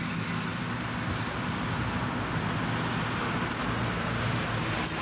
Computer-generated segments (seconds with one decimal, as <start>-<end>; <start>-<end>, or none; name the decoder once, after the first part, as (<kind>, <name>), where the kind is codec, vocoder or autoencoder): none